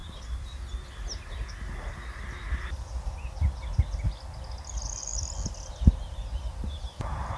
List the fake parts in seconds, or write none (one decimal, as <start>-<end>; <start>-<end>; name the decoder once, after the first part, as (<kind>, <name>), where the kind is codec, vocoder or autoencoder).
none